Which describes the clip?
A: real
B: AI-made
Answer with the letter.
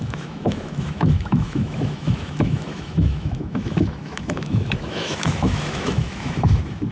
B